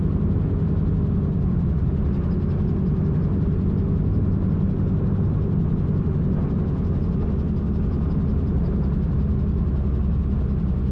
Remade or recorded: recorded